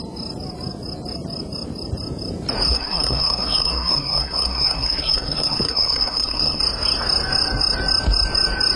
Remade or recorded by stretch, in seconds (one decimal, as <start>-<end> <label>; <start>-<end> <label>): 0.0-2.7 recorded; 2.7-6.6 remade; 6.6-8.8 recorded